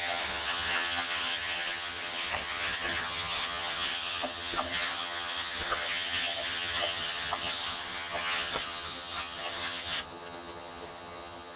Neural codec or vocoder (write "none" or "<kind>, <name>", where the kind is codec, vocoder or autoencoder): vocoder, HiFi-GAN